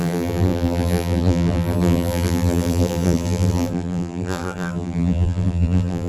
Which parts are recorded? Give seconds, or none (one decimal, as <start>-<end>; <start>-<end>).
none